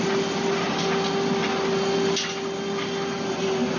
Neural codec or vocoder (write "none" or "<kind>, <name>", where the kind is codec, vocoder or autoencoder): none